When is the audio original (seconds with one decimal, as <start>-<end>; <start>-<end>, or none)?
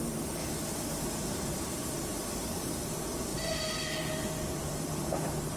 0.4-1.1